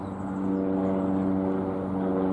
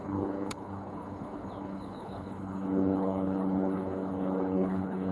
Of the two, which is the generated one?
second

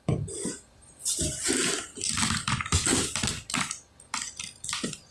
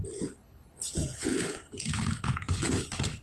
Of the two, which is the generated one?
second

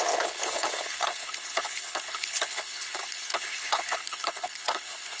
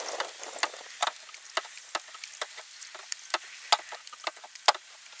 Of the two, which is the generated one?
first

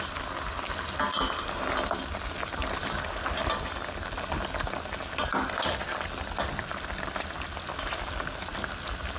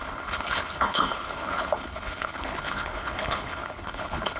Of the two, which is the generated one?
second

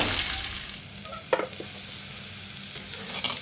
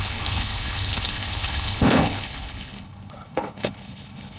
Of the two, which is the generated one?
second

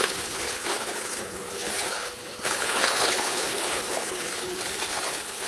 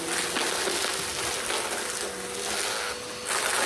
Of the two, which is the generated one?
first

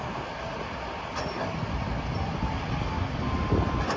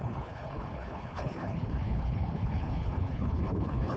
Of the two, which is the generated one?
second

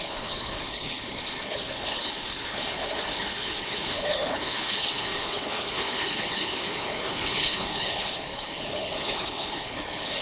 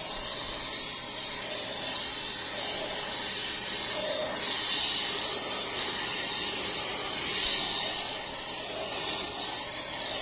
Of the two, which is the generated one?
first